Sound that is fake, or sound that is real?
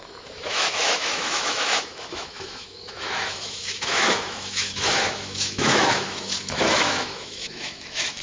fake